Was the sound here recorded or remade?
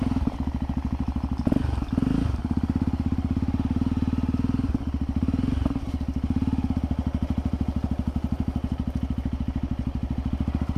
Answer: recorded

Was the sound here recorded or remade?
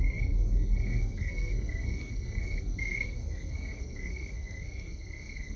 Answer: remade